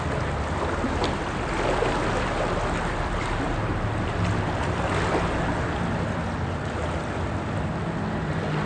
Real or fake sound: real